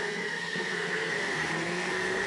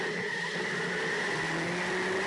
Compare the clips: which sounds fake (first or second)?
first